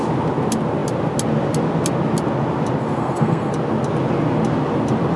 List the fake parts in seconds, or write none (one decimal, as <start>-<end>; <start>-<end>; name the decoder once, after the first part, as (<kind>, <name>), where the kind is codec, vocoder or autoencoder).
2.8-3.5 (codec, SNAC)